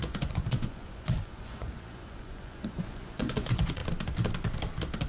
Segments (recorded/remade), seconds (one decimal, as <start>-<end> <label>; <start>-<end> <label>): 0.0-3.8 remade; 3.8-5.1 recorded